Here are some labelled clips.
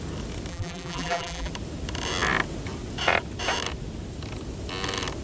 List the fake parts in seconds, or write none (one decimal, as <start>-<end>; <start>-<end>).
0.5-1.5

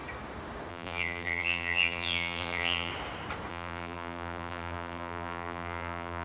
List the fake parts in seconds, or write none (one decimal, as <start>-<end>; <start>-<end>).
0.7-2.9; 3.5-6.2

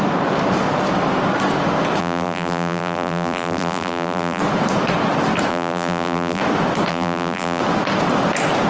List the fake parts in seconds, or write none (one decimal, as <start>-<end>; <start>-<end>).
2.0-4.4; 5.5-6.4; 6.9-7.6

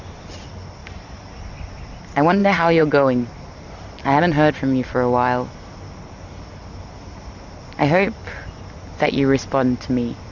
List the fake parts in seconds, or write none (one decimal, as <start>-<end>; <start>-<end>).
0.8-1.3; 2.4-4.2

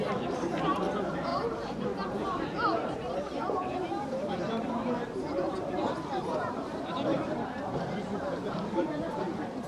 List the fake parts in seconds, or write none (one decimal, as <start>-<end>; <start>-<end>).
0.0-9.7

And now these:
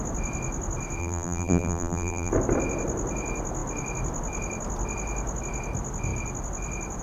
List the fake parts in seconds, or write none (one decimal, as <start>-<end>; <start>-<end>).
1.0-2.3

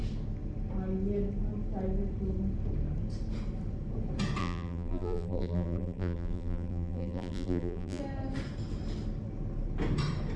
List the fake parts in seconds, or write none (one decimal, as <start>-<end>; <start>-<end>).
4.4-8.0